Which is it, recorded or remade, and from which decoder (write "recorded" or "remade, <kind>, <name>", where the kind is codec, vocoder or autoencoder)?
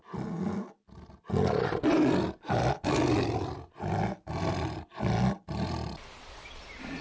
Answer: recorded